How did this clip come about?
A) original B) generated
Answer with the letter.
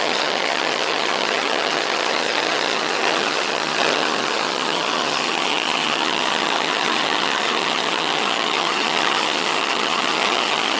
B